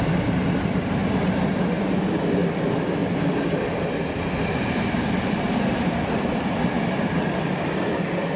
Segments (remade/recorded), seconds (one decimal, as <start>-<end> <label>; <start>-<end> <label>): 0.0-3.0 recorded; 3.0-8.0 remade; 8.0-8.4 recorded